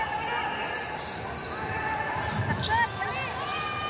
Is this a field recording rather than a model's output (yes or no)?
yes